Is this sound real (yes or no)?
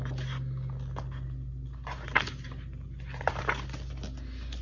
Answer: yes